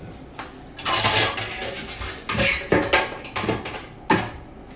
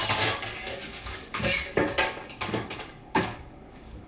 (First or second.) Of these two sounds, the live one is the first